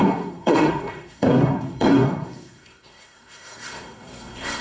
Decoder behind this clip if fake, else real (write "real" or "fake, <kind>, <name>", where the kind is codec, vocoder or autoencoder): fake, codec, SNAC